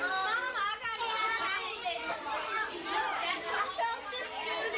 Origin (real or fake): real